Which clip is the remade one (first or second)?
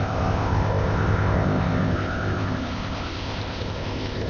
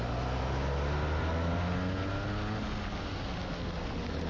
first